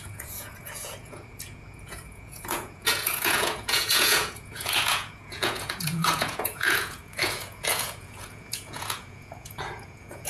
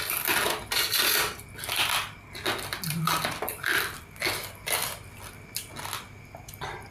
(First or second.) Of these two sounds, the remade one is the first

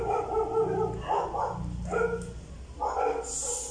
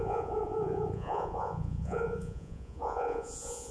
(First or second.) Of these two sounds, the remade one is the second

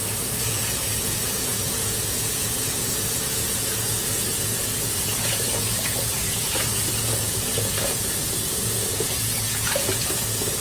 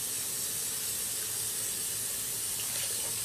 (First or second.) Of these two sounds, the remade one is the first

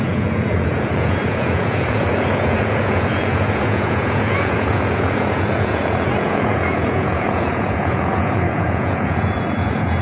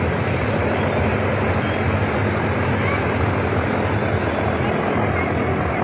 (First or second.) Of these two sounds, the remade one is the first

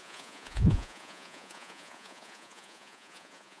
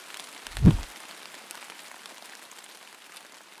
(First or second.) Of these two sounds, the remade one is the first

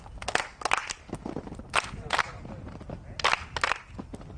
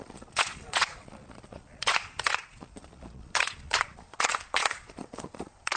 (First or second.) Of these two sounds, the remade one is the second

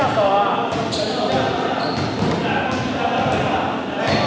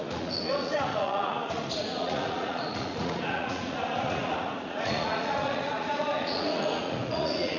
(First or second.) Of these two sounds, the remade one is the second